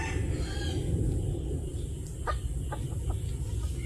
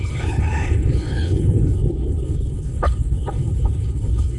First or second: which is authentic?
first